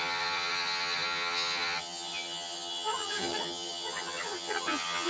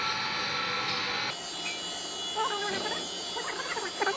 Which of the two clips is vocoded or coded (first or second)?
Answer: first